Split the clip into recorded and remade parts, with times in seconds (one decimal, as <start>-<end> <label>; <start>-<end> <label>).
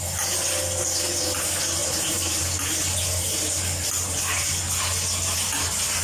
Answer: 0.0-1.8 recorded; 1.8-2.4 remade; 2.4-6.0 recorded